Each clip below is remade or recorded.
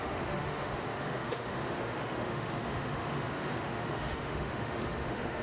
remade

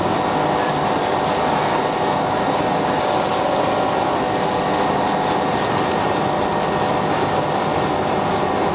recorded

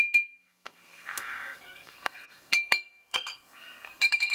remade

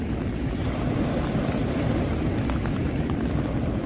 recorded